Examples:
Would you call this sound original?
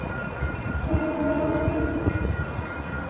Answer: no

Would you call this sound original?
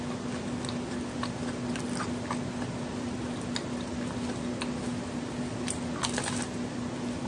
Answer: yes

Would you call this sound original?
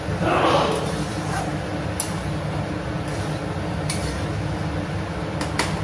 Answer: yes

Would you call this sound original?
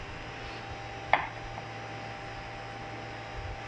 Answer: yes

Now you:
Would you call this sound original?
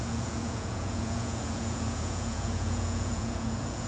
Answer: no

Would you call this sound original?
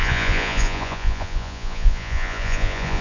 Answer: no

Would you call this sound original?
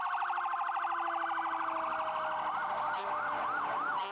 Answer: yes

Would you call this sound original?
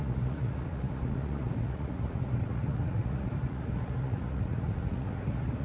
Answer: no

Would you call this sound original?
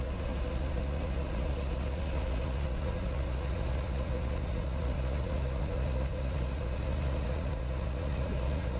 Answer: no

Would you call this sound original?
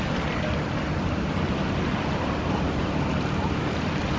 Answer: yes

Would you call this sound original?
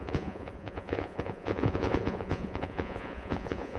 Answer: no